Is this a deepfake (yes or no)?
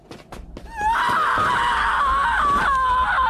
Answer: no